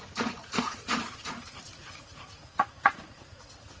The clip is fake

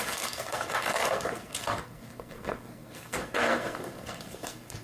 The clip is fake